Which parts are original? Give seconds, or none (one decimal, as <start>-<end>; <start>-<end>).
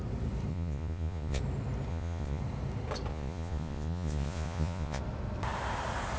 0.0-0.5; 1.4-1.9; 2.4-3.1; 5.0-6.2